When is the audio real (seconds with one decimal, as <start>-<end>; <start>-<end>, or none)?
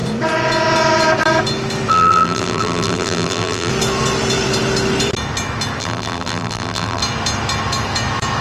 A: 0.0-1.9; 3.7-5.8; 7.0-8.4